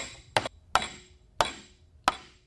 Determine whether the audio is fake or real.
real